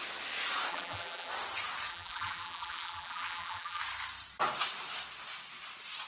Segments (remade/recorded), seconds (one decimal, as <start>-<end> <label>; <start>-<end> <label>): 0.0-0.7 recorded; 0.7-1.3 remade; 1.3-1.9 recorded; 1.9-3.8 remade; 3.8-6.1 recorded